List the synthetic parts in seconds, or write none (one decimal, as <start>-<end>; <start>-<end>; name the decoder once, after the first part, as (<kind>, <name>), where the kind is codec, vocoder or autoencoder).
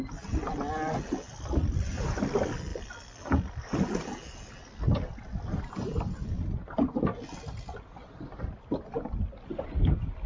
none